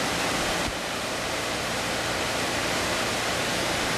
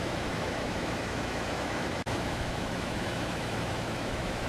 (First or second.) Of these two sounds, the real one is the first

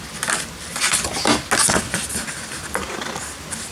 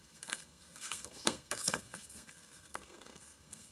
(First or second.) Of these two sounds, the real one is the first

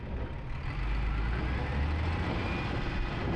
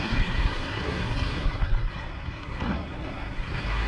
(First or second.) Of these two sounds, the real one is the first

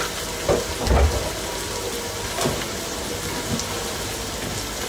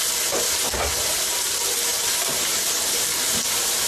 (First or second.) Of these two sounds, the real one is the first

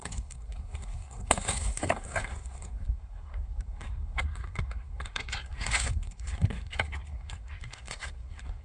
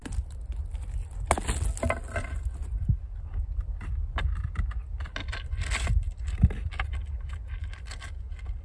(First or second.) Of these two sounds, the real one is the second